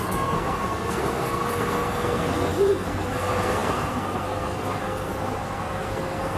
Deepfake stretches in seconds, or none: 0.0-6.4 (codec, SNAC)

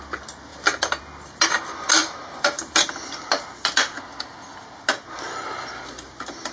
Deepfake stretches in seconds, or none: none